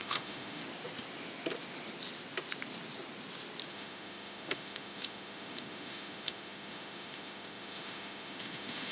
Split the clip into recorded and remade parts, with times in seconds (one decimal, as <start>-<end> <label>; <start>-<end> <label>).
0.0-0.6 remade; 0.6-3.7 recorded; 3.7-8.9 remade